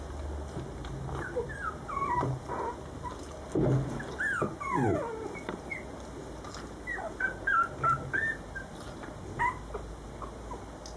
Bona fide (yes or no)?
yes